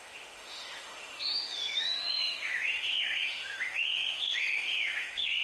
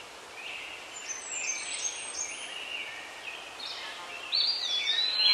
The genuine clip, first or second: second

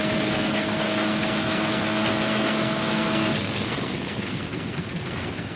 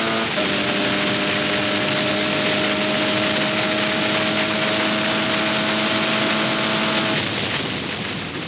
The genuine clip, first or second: second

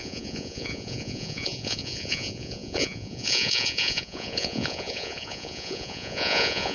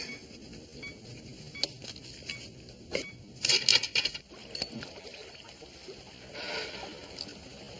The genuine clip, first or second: second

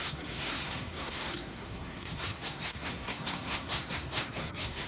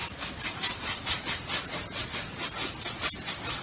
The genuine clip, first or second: second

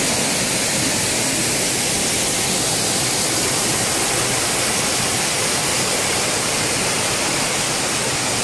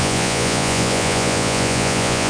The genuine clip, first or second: first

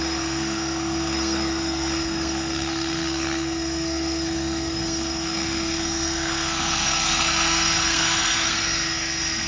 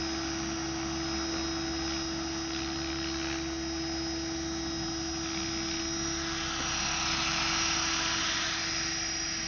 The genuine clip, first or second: second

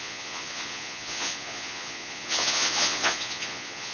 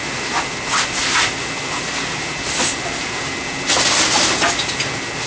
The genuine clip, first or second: second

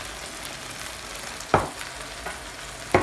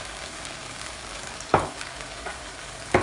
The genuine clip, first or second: first